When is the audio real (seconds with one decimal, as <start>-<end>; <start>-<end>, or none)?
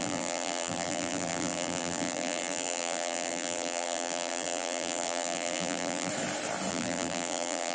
6.1-6.7